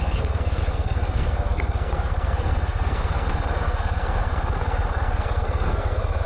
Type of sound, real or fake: fake